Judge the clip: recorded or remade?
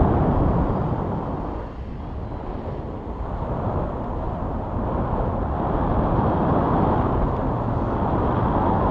recorded